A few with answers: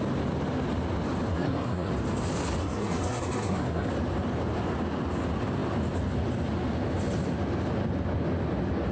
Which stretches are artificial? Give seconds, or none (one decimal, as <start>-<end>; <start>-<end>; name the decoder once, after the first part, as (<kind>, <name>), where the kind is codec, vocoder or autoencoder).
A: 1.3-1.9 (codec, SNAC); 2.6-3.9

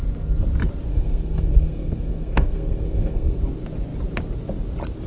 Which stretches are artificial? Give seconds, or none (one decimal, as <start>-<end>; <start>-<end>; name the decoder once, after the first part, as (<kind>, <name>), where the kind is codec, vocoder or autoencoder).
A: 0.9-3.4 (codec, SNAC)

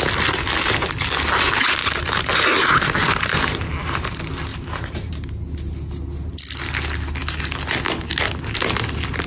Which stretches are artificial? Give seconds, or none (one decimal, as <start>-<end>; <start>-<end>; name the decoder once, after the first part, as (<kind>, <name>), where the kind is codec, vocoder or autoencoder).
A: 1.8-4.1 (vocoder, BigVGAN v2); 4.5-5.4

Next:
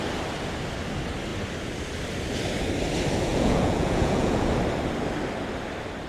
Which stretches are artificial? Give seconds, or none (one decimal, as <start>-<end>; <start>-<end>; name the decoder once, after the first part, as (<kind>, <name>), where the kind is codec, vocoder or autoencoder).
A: 3.3-4.5 (vocoder, Vocos)